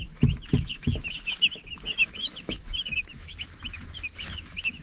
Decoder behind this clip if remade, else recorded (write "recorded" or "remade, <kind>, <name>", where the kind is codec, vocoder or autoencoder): remade, autoencoder, DAC-VAE